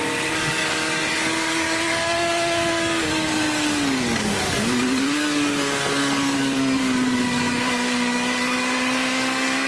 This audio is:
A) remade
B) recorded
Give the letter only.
A